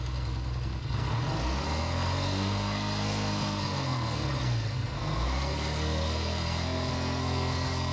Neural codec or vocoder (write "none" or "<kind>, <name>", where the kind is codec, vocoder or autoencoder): codec, SNAC